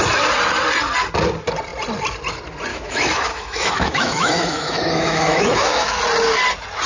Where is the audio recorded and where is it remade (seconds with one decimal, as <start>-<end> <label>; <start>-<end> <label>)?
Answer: 0.0-2.7 recorded; 2.7-6.0 remade; 6.0-6.9 recorded